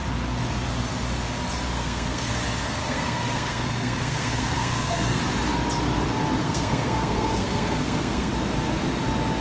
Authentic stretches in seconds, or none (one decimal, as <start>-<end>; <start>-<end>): 0.0-1.7; 2.3-2.8; 5.2-6.4; 8.3-9.4